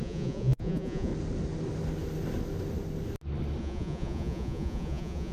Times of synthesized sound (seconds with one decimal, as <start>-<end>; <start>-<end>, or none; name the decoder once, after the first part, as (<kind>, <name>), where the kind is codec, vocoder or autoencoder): 0.0-1.1 (vocoder, Vocos); 3.6-5.3